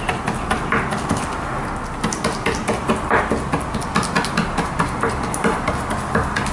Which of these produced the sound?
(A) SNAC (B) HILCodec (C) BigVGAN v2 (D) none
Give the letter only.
D